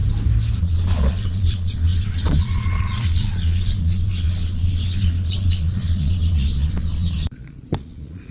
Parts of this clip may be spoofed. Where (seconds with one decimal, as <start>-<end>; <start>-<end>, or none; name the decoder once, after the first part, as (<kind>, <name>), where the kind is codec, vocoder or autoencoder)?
0.6-8.3 (vocoder, Vocos)